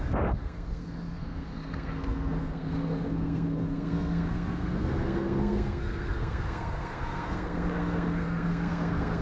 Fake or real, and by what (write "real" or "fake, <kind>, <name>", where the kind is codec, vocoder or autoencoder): fake, codec, SNAC